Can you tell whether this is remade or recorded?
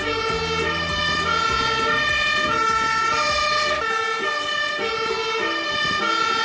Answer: recorded